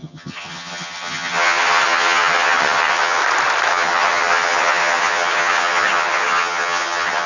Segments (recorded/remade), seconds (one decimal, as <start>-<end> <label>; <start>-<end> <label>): 0.0-3.2 remade; 3.2-3.7 recorded; 3.7-7.3 remade

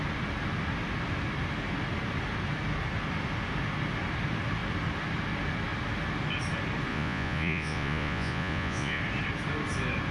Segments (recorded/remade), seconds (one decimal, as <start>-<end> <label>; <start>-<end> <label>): 0.0-6.9 recorded; 6.9-9.0 remade; 9.0-10.1 recorded

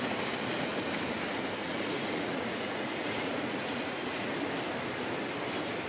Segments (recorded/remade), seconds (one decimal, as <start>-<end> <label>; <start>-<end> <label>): 0.0-1.6 recorded; 1.6-4.3 remade; 4.3-5.9 recorded

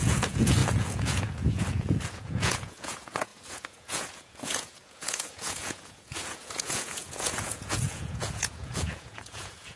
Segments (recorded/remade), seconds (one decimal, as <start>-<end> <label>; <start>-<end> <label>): 0.0-9.8 remade

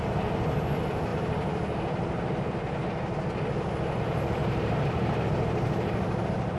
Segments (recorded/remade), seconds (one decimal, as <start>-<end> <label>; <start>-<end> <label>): 0.0-4.4 recorded; 4.4-5.3 remade; 5.3-6.6 recorded

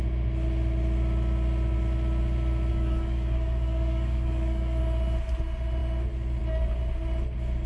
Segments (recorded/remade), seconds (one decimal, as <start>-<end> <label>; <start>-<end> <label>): 0.0-2.7 recorded; 2.7-4.8 remade; 4.8-7.7 recorded

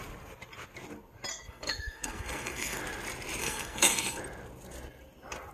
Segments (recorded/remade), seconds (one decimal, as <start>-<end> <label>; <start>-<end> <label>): 0.0-1.3 recorded; 1.3-2.8 remade; 2.8-3.4 recorded; 3.4-4.2 remade; 4.2-5.5 recorded

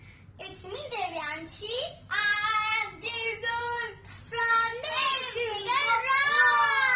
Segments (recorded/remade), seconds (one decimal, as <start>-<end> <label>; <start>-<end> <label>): 0.0-7.0 recorded